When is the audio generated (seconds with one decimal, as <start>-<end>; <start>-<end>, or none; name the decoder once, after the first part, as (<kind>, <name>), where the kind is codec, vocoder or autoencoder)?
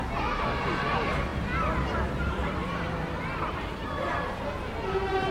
none